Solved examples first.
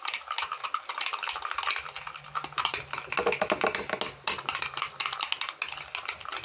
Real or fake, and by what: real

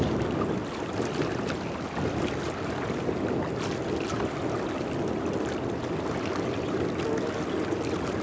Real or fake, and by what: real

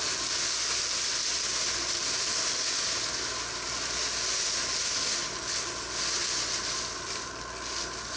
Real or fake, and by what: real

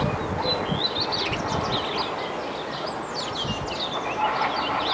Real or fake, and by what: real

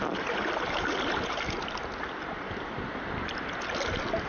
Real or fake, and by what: real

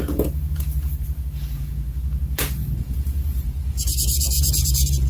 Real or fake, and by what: fake, vocoder, Vocos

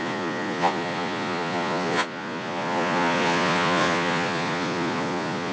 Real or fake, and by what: fake, vocoder, Vocos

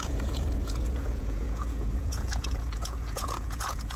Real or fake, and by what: fake, vocoder, Vocos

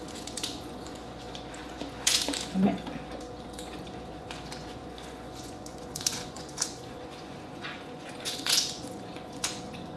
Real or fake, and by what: fake, vocoder, Vocos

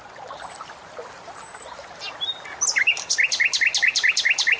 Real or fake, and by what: real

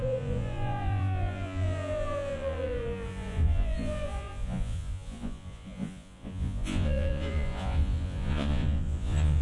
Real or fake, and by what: fake, vocoder, Vocos